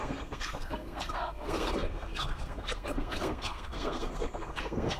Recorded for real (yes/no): no